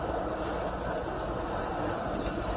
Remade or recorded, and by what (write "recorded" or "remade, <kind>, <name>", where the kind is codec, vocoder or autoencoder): recorded